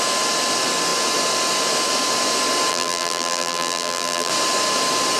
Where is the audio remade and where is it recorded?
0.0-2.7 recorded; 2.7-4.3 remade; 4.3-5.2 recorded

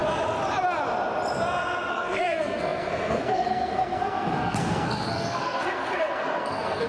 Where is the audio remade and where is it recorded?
0.0-1.9 recorded; 1.9-6.9 remade

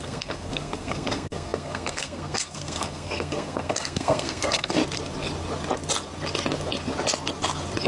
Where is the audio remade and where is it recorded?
0.0-4.8 remade; 4.8-7.9 recorded

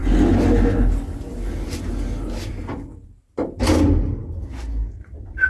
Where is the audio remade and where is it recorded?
0.0-5.5 recorded